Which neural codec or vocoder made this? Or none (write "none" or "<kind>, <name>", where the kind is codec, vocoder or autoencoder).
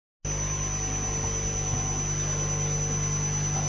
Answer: none